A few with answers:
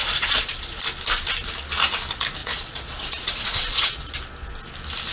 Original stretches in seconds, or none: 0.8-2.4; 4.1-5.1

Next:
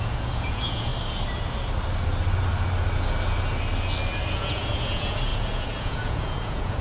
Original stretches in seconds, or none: 0.9-4.3

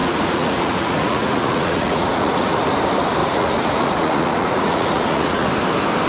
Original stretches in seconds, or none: 2.6-3.2; 5.5-6.1

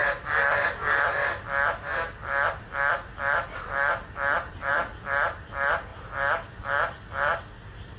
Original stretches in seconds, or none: 0.0-8.0